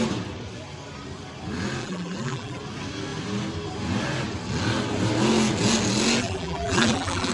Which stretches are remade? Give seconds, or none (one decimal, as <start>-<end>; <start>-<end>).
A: 1.8-2.6; 6.2-7.3